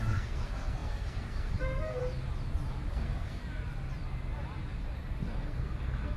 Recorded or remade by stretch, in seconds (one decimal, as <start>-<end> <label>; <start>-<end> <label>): 0.0-2.0 remade; 2.0-2.9 recorded; 2.9-3.4 remade; 3.4-5.4 recorded; 5.4-6.2 remade